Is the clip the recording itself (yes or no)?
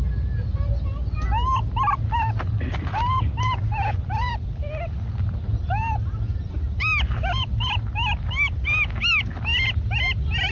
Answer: yes